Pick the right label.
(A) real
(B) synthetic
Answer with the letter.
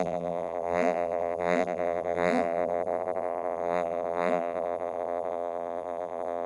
B